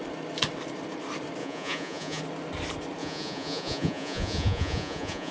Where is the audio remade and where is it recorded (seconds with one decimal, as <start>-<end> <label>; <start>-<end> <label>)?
0.0-1.4 recorded; 1.4-2.2 remade; 2.2-3.0 recorded; 3.0-5.3 remade